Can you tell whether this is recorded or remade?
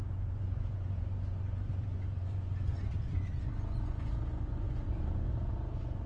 remade